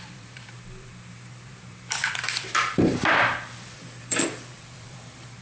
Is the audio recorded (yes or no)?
no